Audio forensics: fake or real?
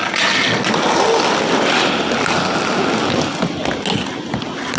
real